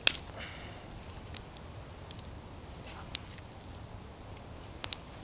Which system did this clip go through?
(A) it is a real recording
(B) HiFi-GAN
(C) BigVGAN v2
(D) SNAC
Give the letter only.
A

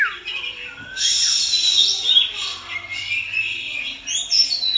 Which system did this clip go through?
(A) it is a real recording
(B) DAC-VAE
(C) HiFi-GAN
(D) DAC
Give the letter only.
A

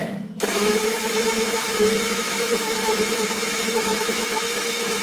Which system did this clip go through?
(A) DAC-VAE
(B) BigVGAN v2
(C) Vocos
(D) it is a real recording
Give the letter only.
A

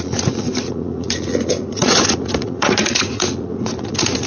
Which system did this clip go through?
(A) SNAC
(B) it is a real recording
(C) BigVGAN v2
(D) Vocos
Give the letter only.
D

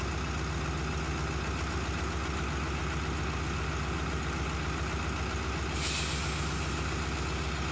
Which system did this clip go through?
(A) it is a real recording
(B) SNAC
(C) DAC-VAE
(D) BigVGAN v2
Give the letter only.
A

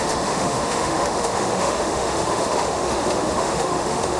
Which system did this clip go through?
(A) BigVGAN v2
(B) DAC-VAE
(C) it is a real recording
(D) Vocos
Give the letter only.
B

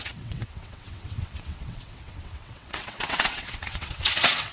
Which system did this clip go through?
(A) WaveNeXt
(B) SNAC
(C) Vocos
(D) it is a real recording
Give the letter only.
A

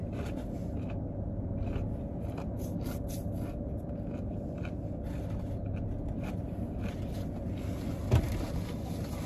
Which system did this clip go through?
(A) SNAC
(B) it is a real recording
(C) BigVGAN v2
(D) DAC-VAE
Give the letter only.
B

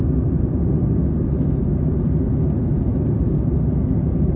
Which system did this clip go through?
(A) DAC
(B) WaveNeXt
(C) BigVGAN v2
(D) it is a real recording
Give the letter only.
D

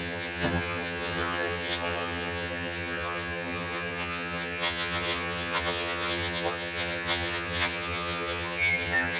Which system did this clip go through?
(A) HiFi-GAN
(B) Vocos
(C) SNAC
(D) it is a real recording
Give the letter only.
A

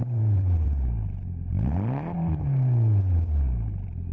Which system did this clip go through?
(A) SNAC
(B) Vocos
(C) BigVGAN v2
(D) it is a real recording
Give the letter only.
C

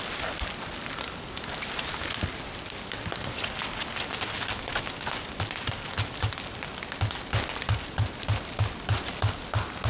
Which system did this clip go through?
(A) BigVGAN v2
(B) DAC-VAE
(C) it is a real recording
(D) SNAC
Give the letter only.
C